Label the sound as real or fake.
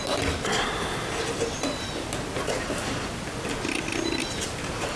real